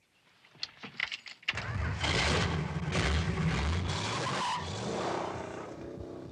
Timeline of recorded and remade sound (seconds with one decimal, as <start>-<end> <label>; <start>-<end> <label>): 0.0-6.3 recorded